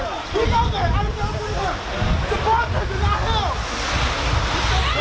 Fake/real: real